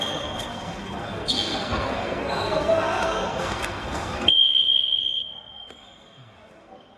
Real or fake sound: fake